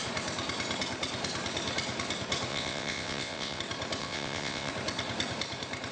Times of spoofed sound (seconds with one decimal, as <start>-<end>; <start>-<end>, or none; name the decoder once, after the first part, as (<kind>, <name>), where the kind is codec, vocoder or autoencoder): 2.5-3.6 (vocoder, WaveNeXt); 4.0-4.7

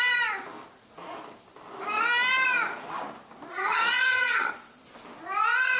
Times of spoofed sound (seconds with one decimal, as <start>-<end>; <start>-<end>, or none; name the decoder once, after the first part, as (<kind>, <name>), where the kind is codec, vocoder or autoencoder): 3.5-4.5 (vocoder, HiFi-GAN)

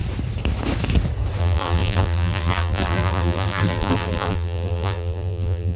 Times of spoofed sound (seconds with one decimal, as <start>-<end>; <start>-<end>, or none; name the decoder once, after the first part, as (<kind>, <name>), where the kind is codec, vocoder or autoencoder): 1.4-5.8 (vocoder, BigVGAN v2)

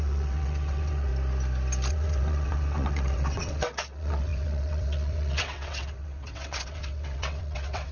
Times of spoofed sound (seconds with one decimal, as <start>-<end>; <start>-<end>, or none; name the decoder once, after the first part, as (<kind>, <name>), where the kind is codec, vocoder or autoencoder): 0.0-1.1 (vocoder, WaveNeXt); 1.9-7.9

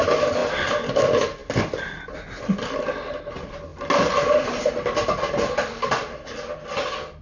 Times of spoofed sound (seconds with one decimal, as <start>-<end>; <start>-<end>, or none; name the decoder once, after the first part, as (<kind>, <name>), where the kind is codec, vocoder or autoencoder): none

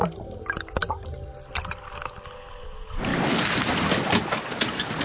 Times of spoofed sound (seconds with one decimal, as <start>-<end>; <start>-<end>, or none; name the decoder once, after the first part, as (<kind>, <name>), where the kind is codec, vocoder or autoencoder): none

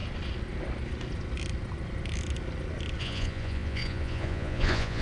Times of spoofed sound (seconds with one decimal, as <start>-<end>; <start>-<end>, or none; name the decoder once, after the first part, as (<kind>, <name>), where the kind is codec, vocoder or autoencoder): 3.0-5.0 (vocoder, Vocos)

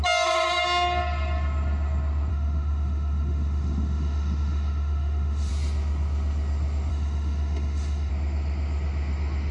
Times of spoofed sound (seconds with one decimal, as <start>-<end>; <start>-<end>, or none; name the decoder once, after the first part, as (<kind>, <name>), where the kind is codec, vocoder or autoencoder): 2.3-5.5 (autoencoder, DAC-VAE); 6.9-8.1